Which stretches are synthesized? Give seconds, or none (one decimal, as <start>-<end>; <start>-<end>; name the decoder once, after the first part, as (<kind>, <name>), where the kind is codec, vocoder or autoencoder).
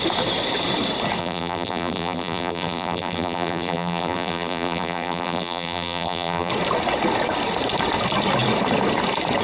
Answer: 1.2-6.5 (vocoder, BigVGAN v2)